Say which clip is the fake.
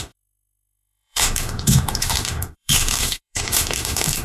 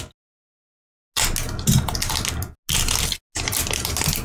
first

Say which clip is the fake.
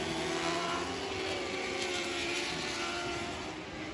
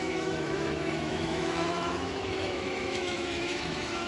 second